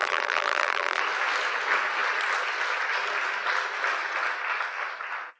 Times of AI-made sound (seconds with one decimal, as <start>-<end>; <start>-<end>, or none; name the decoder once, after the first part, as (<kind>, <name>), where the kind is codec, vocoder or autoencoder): 0.0-1.0 (vocoder, BigVGAN v2)